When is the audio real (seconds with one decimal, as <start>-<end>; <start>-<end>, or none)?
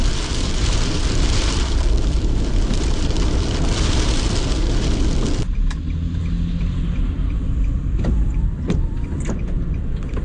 6.2-7.0